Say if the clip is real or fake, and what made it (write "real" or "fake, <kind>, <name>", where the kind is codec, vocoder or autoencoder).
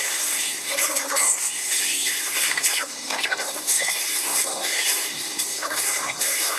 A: fake, codec, SNAC